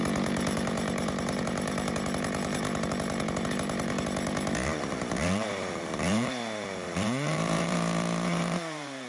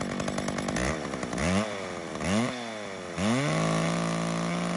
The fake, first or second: first